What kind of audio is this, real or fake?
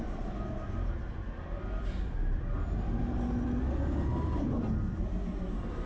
real